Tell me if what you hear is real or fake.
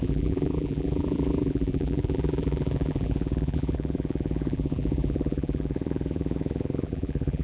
fake